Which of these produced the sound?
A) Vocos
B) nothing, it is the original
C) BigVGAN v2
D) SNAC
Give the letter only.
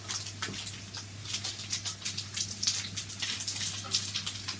B